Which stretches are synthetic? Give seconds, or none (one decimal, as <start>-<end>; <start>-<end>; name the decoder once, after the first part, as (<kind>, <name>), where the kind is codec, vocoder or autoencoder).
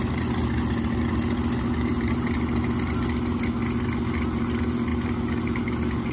1.9-2.4 (vocoder, BigVGAN v2)